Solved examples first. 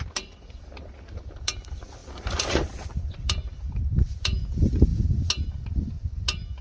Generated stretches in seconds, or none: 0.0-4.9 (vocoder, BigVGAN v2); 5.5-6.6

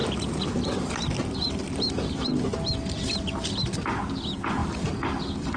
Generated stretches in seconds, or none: 0.0-3.4 (vocoder, BigVGAN v2); 4.6-5.6

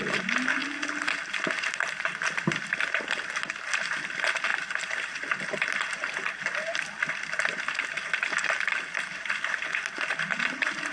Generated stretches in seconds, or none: 0.6-2.7 (vocoder, BigVGAN v2); 4.5-7.6